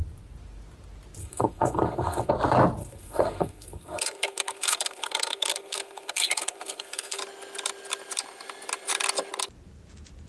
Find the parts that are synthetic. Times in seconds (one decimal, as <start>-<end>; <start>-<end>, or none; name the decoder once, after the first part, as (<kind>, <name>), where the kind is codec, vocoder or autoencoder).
1.2-2.3 (codec, SNAC); 2.8-7.2